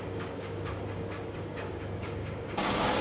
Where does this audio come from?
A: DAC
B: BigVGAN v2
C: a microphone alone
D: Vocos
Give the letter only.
A